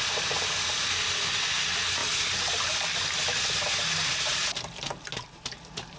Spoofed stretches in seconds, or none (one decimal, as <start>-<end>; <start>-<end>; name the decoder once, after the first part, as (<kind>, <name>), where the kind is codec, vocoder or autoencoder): none